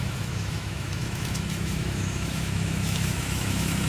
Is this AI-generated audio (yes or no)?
yes